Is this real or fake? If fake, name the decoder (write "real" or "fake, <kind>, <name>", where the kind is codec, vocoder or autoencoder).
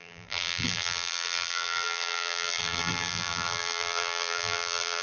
fake, vocoder, BigVGAN v2